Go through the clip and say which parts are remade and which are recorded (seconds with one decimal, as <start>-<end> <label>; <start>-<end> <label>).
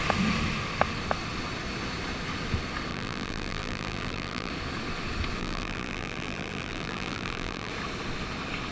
0.0-2.9 recorded; 2.9-4.5 remade; 4.5-5.4 recorded; 5.4-7.7 remade; 7.7-8.7 recorded